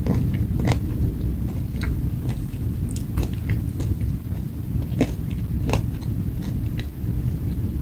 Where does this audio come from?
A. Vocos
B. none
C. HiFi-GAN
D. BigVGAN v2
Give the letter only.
B